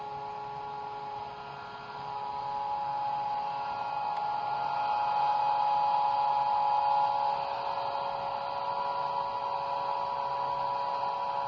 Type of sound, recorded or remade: recorded